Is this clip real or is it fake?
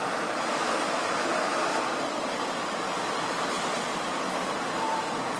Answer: fake